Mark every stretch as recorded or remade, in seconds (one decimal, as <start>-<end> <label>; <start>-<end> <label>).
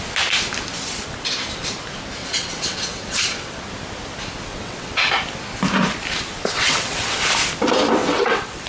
0.0-2.2 recorded; 2.2-3.6 remade; 3.6-4.5 recorded; 4.5-5.1 remade; 5.1-6.4 recorded; 6.4-7.2 remade; 7.2-8.0 recorded; 8.0-8.7 remade